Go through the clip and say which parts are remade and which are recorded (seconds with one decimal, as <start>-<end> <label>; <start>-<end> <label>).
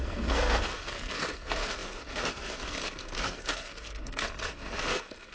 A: 0.0-5.3 remade